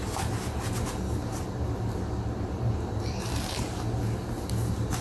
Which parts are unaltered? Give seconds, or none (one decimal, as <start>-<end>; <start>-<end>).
0.0-5.0